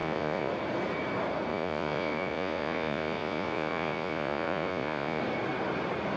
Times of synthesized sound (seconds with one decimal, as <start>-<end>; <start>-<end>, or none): 0.0-0.5; 1.5-5.2